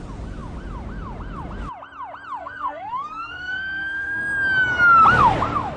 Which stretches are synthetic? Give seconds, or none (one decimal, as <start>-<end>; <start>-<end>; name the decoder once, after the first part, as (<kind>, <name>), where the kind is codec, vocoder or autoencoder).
2.4-4.2 (codec, SNAC)